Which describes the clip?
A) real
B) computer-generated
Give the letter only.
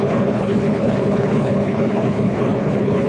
B